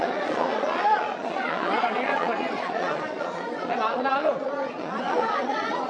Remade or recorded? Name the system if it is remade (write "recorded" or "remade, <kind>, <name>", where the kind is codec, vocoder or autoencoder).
remade, vocoder, Vocos